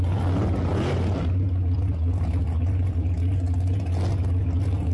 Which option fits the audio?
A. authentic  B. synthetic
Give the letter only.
A